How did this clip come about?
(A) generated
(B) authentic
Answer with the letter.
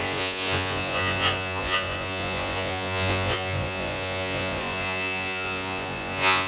A